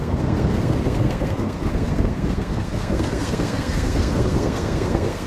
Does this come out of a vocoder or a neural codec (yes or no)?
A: yes